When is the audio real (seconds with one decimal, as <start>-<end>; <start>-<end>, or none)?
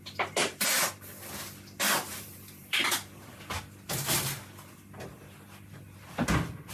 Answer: 0.0-0.4; 0.9-2.1; 3.6-6.7